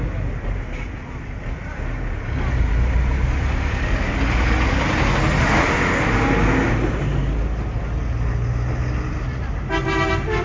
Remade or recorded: recorded